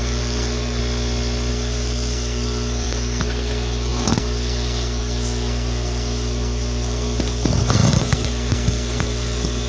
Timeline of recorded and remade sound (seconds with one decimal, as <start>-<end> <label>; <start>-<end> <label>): 0.0-0.8 remade; 0.8-1.5 recorded; 1.5-9.7 remade